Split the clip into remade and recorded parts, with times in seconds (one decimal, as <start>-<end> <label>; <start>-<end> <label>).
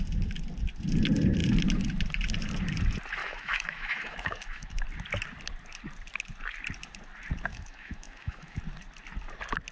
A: 0.0-3.2 recorded; 3.2-4.8 remade; 4.8-7.5 recorded; 7.5-8.6 remade; 8.6-9.7 recorded